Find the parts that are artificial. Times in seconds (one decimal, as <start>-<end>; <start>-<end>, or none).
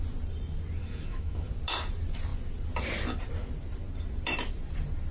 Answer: 0.8-1.5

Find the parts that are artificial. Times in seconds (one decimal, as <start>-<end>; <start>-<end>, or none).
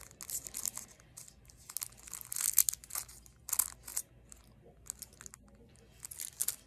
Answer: none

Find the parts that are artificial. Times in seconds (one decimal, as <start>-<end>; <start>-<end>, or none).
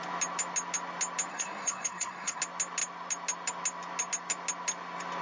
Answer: 1.3-2.4